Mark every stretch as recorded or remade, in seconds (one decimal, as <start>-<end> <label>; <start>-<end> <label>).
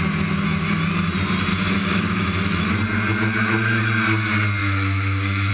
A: 0.0-1.5 recorded; 1.5-2.7 remade; 2.7-4.6 recorded; 4.6-5.5 remade